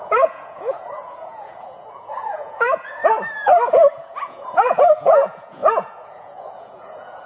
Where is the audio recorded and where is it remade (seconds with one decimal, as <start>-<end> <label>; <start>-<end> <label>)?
0.0-3.0 remade; 3.0-3.7 recorded; 3.7-7.3 remade